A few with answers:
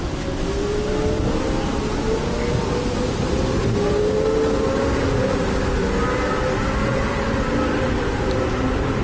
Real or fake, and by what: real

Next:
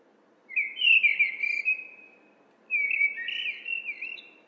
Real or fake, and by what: real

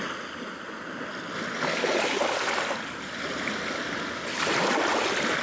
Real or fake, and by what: real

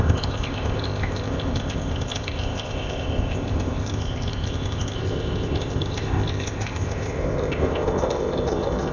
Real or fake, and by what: fake, codec, ZipCodec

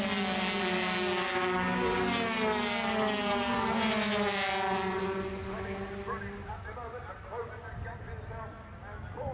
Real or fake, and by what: real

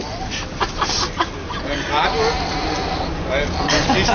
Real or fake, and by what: real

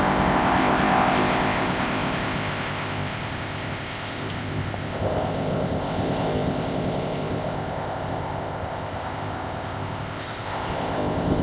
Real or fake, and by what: fake, codec, ZipCodec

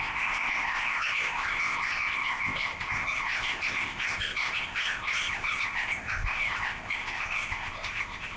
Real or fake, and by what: fake, codec, ZipCodec